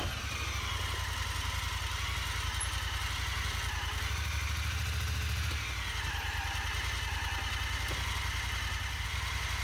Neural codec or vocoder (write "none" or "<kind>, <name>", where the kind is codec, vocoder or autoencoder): none